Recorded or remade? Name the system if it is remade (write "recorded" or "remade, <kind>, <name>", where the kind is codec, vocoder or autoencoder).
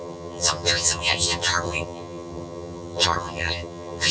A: remade, vocoder, HiFi-GAN